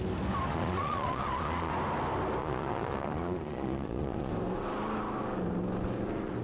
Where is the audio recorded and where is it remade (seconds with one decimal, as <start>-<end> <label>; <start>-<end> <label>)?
0.0-0.5 recorded; 0.5-1.7 remade; 1.7-2.4 recorded; 2.4-4.3 remade; 4.3-6.4 recorded